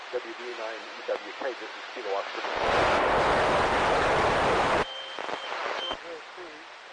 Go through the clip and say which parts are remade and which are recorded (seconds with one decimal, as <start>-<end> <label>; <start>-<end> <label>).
0.0-6.9 recorded